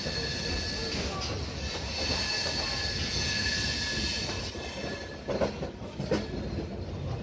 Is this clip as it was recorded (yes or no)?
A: yes